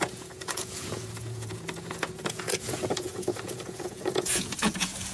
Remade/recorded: remade